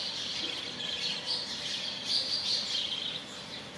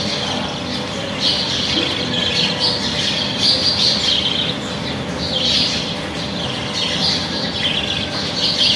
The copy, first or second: first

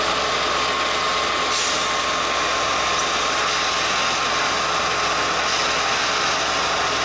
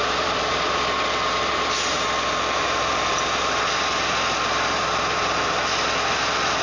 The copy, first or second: second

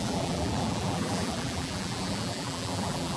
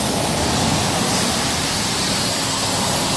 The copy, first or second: first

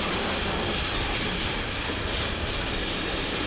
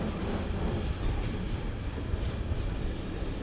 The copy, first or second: second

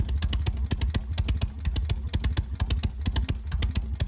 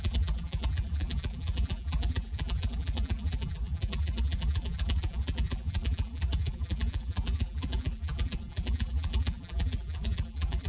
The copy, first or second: second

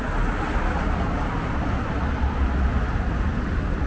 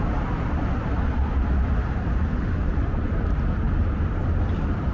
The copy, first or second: second